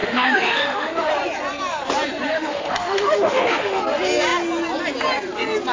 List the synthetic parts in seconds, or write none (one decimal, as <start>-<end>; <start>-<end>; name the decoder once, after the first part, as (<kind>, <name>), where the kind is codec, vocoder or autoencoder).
0.0-1.1 (autoencoder, DAC-VAE); 2.3-3.8